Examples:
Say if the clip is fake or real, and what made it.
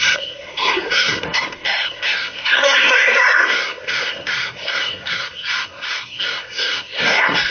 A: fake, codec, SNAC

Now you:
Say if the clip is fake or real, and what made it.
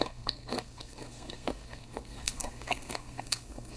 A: fake, codec, SNAC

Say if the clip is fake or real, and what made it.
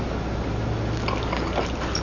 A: real